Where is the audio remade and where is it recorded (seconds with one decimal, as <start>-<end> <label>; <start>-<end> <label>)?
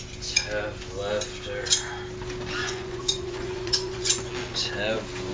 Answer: 0.0-2.6 recorded; 2.6-4.3 remade; 4.3-5.3 recorded